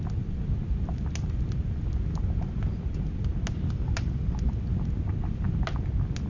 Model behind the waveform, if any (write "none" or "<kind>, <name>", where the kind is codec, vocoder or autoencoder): none